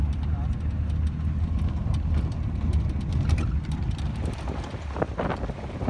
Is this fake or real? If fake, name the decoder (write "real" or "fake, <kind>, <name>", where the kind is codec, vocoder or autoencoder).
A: real